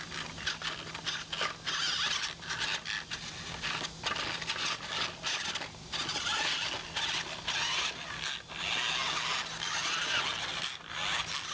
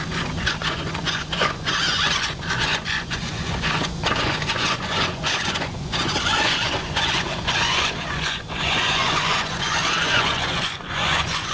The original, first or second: first